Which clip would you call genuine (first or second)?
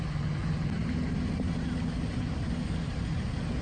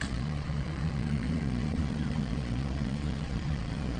first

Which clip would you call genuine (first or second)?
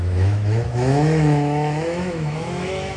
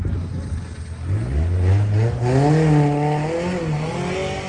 second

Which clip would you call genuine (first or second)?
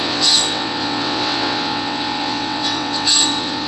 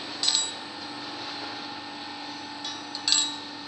second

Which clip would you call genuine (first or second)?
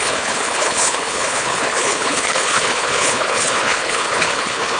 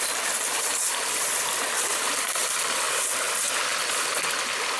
second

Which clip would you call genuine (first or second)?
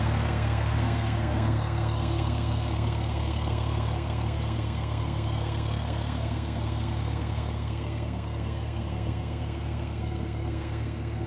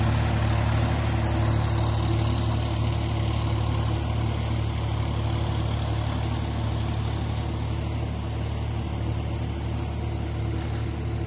second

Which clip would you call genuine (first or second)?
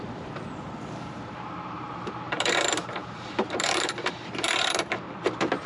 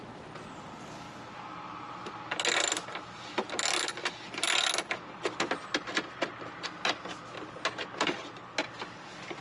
second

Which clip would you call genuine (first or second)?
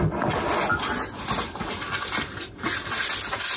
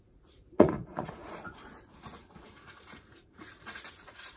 first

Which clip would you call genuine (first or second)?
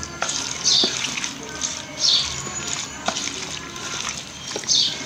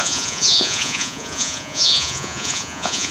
first